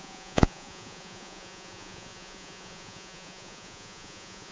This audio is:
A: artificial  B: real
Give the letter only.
A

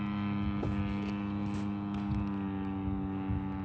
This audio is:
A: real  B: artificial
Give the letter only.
A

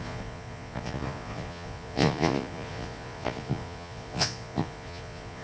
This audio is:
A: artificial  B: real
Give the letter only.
A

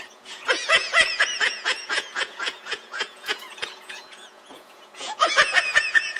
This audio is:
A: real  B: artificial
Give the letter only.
B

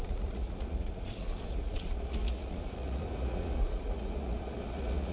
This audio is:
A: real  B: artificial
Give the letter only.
B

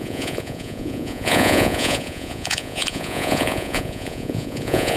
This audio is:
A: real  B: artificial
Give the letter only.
B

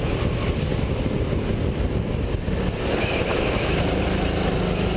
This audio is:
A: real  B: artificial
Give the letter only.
A